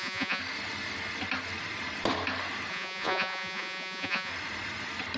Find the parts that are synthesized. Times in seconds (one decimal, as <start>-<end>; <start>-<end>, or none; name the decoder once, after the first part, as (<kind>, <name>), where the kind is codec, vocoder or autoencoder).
0.0-0.4 (vocoder, Vocos); 2.7-4.3